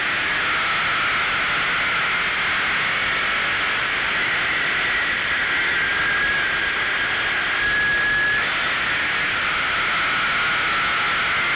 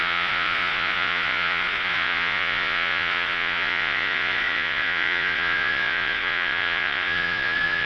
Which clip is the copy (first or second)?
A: second